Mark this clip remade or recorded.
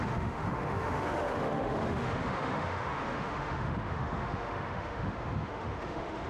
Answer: remade